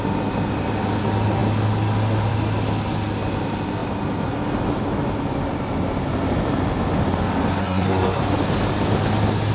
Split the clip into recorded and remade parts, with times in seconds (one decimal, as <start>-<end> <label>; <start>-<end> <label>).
0.0-7.6 recorded; 7.6-8.2 remade; 8.2-9.5 recorded